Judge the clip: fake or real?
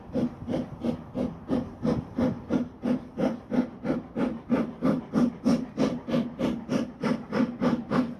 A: real